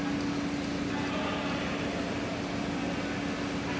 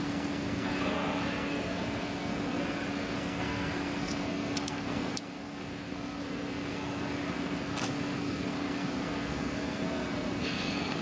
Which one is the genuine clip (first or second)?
first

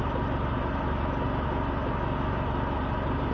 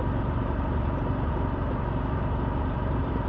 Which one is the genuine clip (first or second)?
first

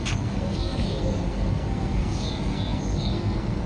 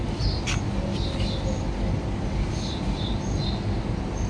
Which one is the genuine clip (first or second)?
second